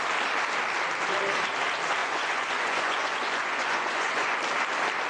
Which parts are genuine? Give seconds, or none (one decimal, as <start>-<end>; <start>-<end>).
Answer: 0.0-2.0; 4.4-5.1